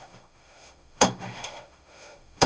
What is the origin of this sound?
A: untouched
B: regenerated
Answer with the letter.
B